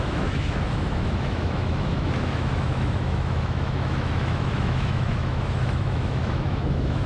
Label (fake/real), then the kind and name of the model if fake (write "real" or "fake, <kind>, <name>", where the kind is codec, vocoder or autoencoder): fake, autoencoder, DAC-VAE